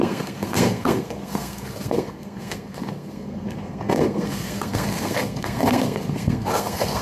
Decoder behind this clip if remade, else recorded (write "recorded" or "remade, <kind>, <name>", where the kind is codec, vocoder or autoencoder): remade, codec, SNAC